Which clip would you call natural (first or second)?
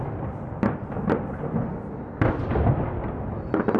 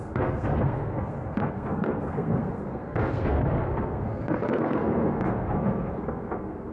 first